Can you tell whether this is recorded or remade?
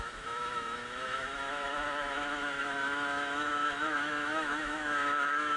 remade